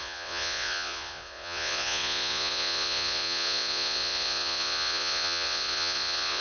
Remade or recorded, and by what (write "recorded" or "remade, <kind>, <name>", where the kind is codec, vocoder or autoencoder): remade, vocoder, Vocos